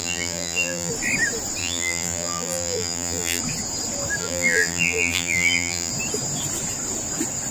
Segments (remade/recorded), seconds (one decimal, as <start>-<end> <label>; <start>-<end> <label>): 0.0-0.9 remade; 0.9-1.6 recorded; 1.6-3.4 remade; 3.4-4.2 recorded; 4.2-5.9 remade; 5.9-7.5 recorded